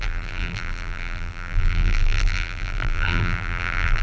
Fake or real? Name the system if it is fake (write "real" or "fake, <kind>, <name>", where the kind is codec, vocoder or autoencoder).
fake, vocoder, BigVGAN v2